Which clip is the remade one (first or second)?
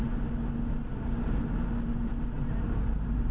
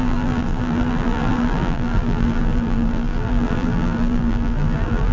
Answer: second